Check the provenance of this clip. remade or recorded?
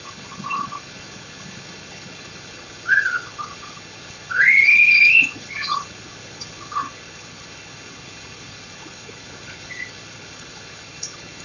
remade